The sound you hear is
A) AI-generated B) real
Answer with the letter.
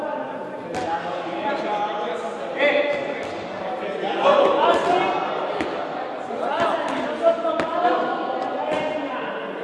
B